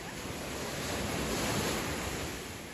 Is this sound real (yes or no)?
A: yes